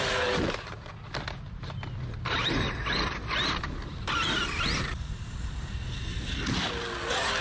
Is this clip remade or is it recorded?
recorded